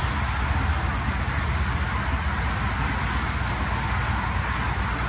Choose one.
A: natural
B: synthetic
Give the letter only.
A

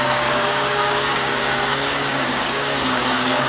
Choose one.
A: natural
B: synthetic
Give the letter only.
B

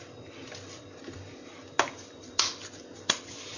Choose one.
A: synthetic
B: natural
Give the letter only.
B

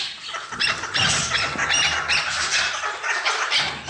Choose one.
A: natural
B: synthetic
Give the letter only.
A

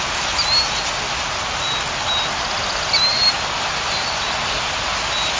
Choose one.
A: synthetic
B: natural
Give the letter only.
B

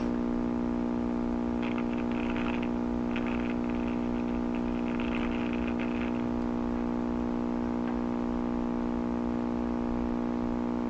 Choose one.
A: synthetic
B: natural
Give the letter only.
B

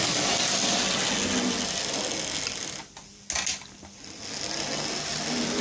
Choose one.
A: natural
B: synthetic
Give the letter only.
A